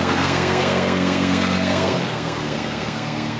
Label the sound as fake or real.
fake